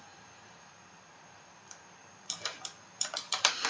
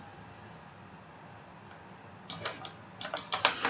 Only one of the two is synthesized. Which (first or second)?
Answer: first